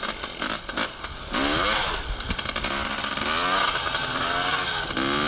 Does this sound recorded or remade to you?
recorded